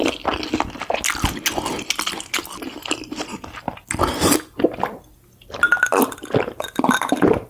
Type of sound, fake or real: real